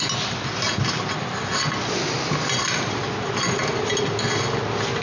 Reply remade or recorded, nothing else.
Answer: recorded